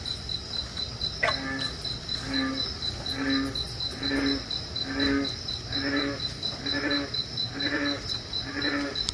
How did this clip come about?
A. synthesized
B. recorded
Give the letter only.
B